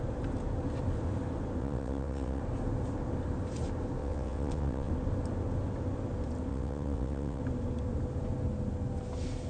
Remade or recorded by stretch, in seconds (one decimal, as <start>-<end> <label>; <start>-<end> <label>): 0.0-1.6 recorded; 1.6-2.4 remade; 2.4-4.0 recorded; 4.0-4.9 remade; 4.9-6.5 recorded; 6.5-7.4 remade; 7.4-9.5 recorded